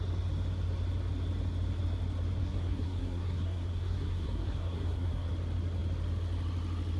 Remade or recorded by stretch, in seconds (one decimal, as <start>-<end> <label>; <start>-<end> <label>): 0.0-2.4 recorded; 2.4-5.3 remade; 5.3-7.0 recorded